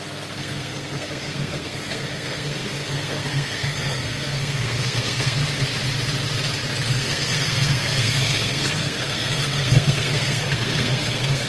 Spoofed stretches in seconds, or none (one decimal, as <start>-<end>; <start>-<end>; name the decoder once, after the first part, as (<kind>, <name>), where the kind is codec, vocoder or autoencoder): 0.0-5.4 (codec, SNAC); 6.9-11.5